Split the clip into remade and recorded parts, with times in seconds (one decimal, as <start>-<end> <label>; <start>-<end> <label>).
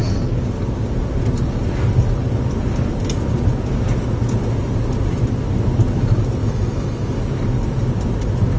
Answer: 0.0-6.4 recorded; 6.4-7.2 remade; 7.2-8.6 recorded